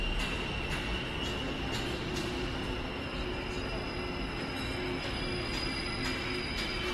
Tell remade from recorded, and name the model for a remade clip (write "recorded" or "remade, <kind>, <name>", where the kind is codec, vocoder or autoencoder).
recorded